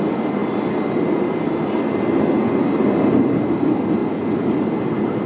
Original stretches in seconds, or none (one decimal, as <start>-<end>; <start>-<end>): 0.0-5.3